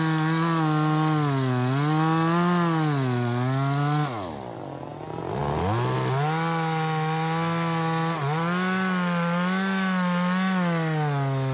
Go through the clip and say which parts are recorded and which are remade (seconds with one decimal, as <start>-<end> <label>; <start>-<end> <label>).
0.0-11.5 recorded